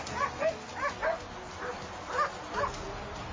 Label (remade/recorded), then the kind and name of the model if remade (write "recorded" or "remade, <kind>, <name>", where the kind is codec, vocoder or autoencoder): recorded